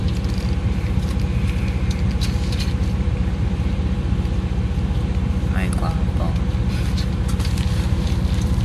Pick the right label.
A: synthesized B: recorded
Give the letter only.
B